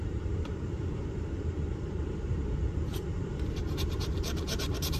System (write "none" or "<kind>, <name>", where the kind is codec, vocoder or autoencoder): vocoder, BigVGAN v2